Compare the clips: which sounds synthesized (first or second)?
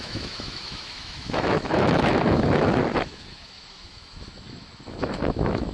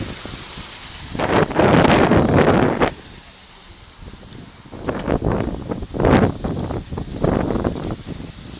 first